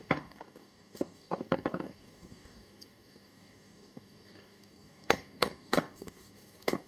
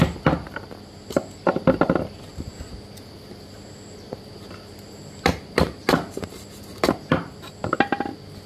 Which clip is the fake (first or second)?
first